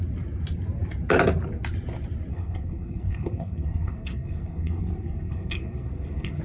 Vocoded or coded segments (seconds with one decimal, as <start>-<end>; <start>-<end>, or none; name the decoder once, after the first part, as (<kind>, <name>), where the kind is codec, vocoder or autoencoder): 2.3-6.4 (codec, SNAC)